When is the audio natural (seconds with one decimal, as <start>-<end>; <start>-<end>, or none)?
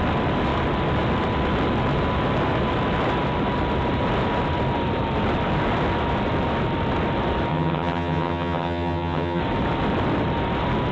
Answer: 0.0-7.5; 9.4-10.9